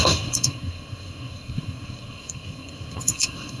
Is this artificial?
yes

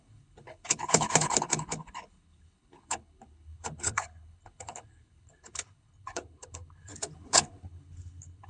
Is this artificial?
yes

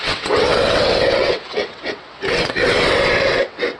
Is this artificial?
yes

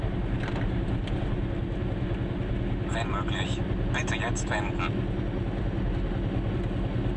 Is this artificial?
no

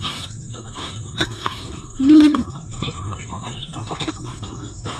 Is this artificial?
yes